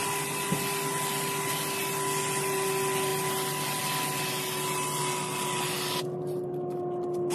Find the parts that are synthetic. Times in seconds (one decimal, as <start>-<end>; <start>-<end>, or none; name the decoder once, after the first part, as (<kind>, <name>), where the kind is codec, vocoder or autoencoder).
none